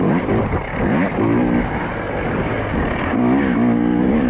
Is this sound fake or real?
real